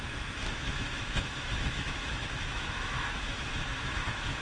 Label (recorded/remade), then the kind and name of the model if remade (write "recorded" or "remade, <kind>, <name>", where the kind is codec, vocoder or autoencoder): remade, autoencoder, DAC-VAE